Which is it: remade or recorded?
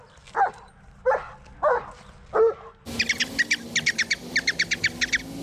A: recorded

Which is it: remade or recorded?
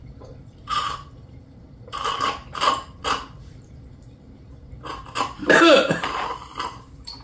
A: remade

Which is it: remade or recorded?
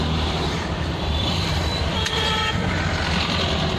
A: remade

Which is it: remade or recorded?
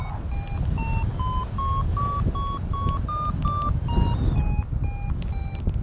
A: recorded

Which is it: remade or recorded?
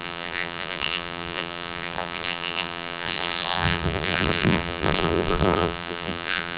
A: remade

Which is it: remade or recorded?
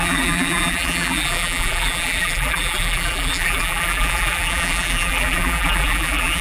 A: remade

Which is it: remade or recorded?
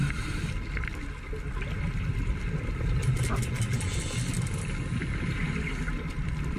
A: recorded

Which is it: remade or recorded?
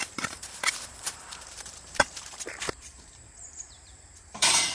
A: remade